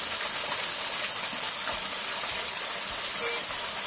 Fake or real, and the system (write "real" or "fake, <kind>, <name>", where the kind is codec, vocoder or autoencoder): real